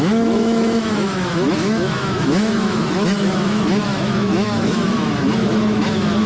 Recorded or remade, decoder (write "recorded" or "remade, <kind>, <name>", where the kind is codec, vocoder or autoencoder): remade, autoencoder, DAC-VAE